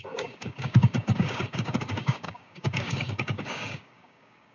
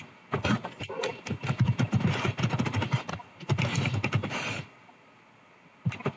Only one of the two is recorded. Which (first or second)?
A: second